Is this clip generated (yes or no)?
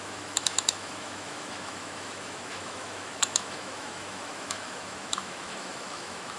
yes